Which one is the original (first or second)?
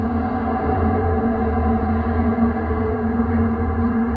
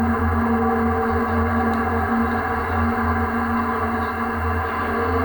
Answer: second